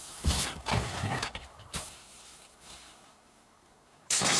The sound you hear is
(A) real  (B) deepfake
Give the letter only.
B